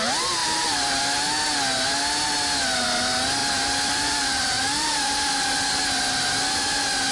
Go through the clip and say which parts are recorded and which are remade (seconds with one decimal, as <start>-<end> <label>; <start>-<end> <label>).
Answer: 0.0-0.4 recorded; 0.4-1.0 remade; 1.0-3.4 recorded; 3.4-5.8 remade; 5.8-7.1 recorded